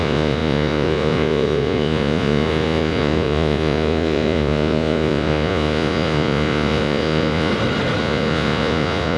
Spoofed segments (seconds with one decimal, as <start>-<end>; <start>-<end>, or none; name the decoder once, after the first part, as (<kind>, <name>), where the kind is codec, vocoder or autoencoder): 0.0-7.5 (vocoder, Vocos); 8.0-9.2